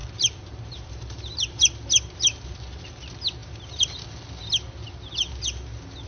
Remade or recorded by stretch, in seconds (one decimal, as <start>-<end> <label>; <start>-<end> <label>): 0.0-1.6 remade; 1.6-6.1 recorded